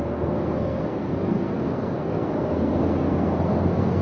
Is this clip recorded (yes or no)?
no